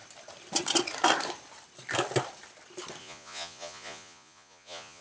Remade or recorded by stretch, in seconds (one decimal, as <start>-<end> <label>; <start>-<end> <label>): 0.0-3.0 recorded; 3.0-5.0 remade